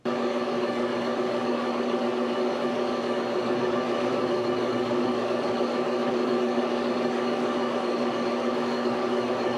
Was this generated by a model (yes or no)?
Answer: yes